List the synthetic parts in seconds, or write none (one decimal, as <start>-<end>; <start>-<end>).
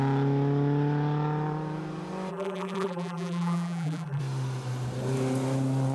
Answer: 2.3-4.2